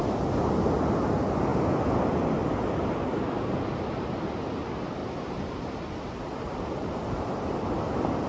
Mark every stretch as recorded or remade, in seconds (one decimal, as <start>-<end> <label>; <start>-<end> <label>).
0.0-2.4 recorded; 2.4-3.2 remade; 3.2-5.0 recorded; 5.0-8.3 remade